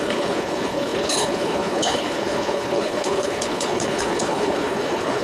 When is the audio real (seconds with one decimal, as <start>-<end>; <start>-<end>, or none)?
none